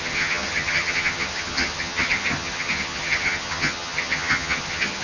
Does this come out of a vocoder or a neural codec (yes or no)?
yes